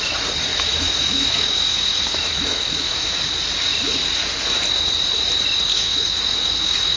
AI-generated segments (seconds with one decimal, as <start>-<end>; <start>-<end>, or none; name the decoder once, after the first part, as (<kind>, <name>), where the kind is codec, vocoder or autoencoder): 0.5-3.2 (autoencoder, DAC-VAE); 5.7-7.0